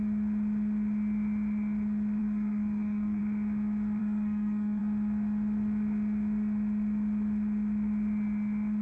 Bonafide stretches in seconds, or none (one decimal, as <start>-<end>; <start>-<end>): 0.0-2.2; 3.2-4.0; 4.8-8.8